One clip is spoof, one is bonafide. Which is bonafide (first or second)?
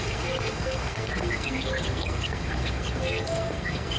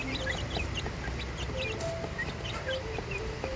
second